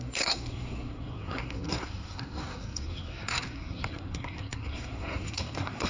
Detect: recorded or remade remade